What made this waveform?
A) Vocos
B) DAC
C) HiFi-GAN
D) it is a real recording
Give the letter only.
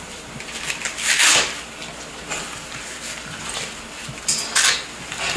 D